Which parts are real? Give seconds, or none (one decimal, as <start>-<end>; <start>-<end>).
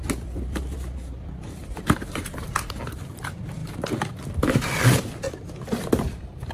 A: 0.0-1.6; 2.2-6.5